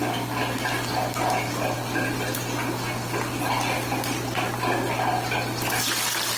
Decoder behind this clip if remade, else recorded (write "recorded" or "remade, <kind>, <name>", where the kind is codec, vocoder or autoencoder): recorded